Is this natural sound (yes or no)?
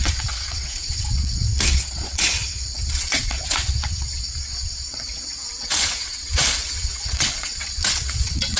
no